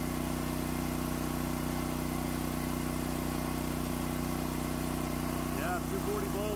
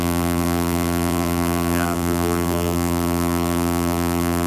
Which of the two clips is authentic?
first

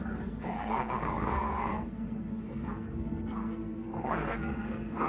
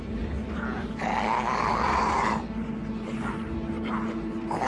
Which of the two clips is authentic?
second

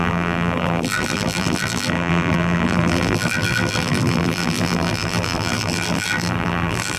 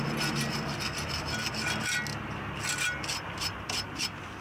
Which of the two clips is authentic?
second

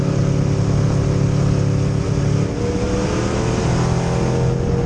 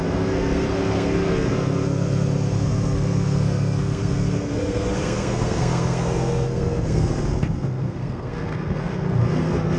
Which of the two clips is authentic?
first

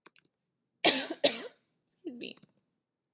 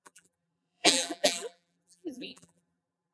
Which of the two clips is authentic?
first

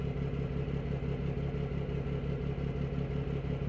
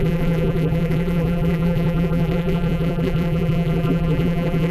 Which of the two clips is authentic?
first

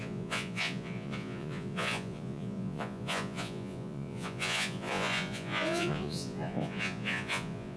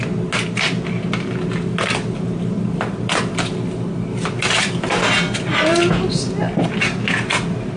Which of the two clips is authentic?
second